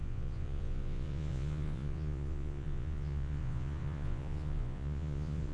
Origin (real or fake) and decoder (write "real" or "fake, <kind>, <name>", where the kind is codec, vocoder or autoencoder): fake, vocoder, Vocos